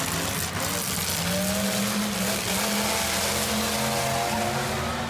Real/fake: real